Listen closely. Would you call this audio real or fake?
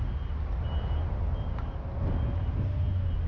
real